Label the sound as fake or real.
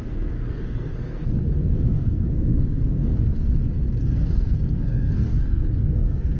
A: fake